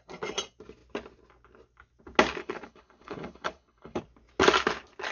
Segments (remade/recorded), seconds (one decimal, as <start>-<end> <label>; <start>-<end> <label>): 0.0-2.4 recorded; 2.4-4.0 remade; 4.0-5.1 recorded